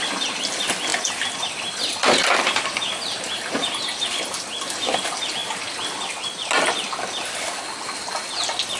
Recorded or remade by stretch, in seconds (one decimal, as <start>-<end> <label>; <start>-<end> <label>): 0.0-8.8 recorded